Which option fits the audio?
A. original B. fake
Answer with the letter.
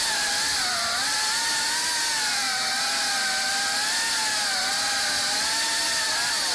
A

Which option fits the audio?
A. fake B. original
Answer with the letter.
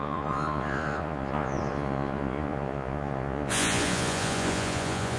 A